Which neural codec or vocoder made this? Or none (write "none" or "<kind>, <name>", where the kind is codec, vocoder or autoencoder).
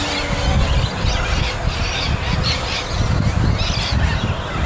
none